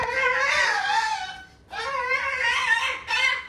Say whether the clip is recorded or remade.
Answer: recorded